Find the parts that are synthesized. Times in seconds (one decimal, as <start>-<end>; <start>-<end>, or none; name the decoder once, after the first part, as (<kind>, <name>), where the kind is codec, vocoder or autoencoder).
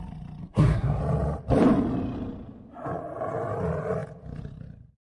0.4-1.0 (codec, SNAC)